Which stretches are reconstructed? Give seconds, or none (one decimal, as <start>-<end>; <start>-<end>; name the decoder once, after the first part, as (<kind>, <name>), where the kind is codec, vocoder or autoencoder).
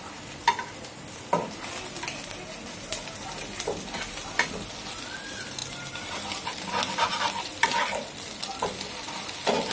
none